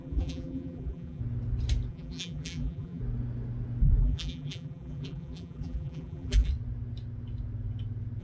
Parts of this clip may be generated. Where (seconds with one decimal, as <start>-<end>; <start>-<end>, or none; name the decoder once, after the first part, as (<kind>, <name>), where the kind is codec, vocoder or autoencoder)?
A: 0.0-1.2 (vocoder, BigVGAN v2); 1.9-3.0; 4.0-6.5